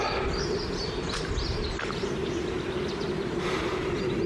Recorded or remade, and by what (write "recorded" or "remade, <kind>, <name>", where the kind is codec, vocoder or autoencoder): recorded